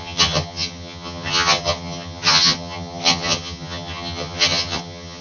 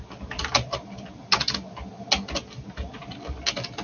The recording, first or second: second